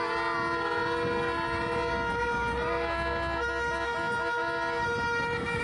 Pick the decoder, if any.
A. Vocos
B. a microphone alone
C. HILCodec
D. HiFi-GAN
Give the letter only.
B